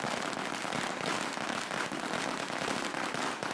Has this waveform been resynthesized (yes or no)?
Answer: no